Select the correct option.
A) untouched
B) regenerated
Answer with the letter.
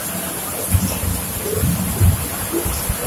A